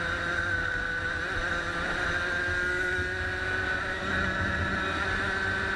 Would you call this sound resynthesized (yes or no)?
no